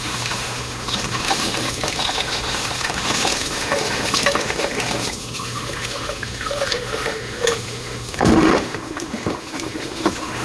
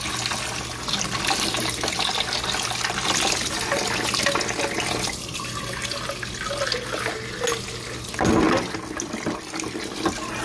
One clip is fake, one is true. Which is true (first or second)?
second